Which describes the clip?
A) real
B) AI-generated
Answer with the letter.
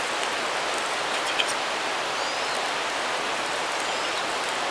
A